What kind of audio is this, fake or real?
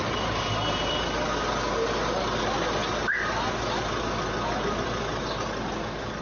real